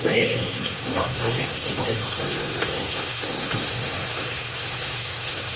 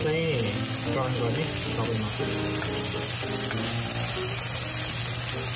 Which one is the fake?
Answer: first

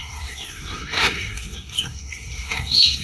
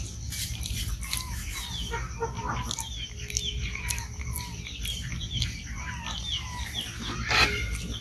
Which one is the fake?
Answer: first